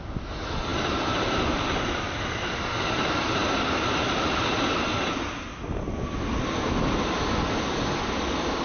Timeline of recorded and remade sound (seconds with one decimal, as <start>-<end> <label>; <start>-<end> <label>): 0.0-8.6 recorded